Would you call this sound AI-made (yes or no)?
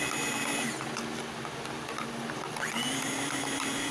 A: no